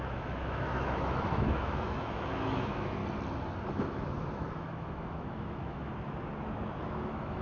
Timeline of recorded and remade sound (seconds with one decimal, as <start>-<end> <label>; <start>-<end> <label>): 0.0-3.0 remade; 3.0-3.7 recorded; 3.7-5.9 remade; 5.9-6.8 recorded; 6.8-7.4 remade

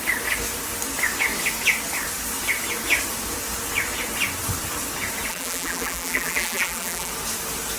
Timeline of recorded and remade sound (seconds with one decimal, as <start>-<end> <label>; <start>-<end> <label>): 0.0-5.3 recorded; 5.3-7.1 remade; 7.1-7.8 recorded

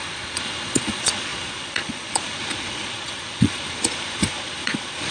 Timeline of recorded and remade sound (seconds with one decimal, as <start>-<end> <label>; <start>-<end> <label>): 0.0-5.1 remade

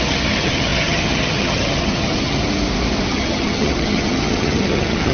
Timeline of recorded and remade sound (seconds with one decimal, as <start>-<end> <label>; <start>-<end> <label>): 0.0-2.4 remade; 2.4-3.1 recorded; 3.1-5.1 remade